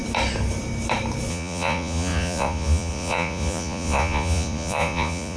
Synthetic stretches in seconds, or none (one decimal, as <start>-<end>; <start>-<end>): 1.3-5.4